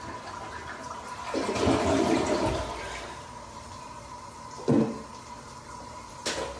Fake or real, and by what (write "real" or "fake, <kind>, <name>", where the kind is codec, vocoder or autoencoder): fake, vocoder, BigVGAN v2